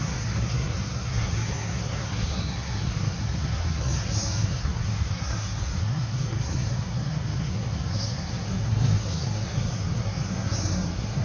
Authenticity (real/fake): fake